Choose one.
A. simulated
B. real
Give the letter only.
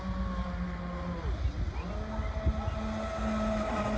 B